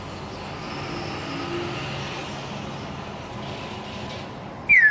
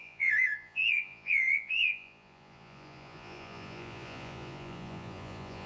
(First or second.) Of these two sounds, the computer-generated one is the second